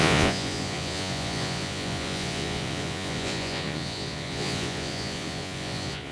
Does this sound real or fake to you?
fake